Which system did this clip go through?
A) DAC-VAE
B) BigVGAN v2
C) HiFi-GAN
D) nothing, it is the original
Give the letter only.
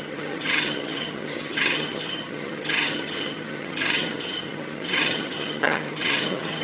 C